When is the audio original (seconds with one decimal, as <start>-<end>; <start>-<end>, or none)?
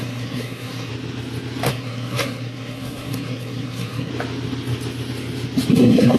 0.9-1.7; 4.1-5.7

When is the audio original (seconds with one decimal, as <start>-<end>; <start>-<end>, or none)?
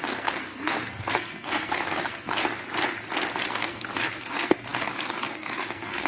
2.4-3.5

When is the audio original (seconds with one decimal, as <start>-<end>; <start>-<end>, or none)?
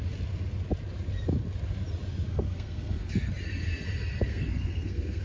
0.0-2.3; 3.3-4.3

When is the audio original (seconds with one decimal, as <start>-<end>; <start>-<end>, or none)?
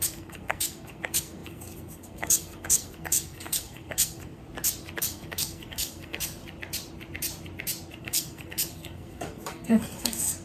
4.4-5.0; 6.4-8.0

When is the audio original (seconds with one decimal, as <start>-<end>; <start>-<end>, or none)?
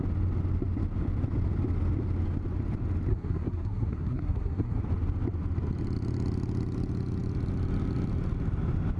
0.0-3.1; 4.8-9.0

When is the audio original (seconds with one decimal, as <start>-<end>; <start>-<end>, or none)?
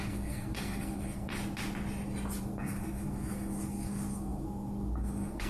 1.3-2.4